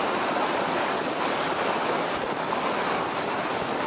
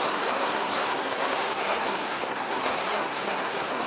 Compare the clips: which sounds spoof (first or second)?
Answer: second